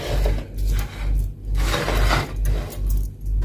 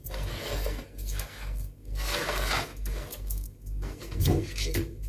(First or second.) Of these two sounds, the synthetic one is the second